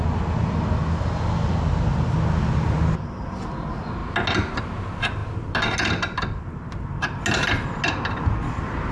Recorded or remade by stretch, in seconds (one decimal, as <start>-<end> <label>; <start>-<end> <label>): 0.0-8.9 recorded

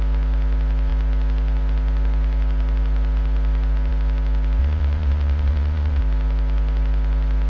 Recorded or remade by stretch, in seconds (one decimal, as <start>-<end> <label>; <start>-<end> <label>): 0.0-4.6 recorded; 4.6-6.0 remade; 6.0-7.5 recorded

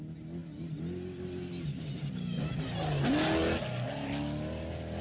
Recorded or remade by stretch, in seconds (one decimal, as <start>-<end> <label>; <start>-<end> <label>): 0.0-5.0 recorded

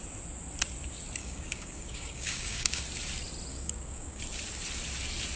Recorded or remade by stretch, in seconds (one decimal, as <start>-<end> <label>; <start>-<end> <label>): 0.0-1.2 recorded; 1.2-2.8 remade; 2.8-3.5 recorded; 3.5-4.2 remade; 4.2-5.4 recorded

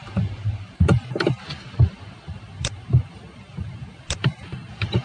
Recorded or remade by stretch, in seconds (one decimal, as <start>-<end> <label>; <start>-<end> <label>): 0.0-5.0 recorded